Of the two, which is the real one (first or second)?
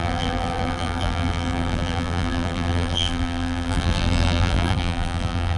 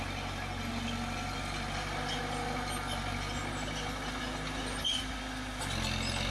second